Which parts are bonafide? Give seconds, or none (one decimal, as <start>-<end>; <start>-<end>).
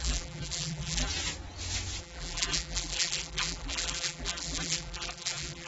1.1-2.0